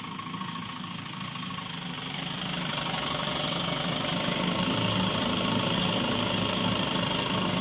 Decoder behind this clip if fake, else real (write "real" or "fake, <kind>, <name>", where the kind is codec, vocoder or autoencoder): real